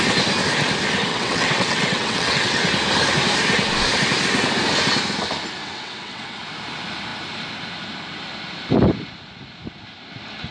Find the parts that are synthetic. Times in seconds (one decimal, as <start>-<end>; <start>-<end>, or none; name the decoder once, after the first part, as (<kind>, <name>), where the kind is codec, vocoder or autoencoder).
1.1-2.6 (vocoder, WaveNeXt); 5.6-6.4